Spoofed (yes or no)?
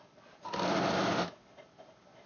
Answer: no